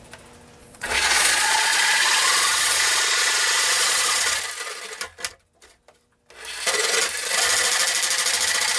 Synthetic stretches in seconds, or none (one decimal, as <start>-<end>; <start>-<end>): 0.6-4.4